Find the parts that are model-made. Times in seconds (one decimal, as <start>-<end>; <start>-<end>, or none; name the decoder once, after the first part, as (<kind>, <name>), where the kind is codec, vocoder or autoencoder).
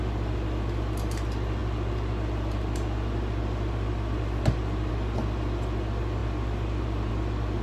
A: none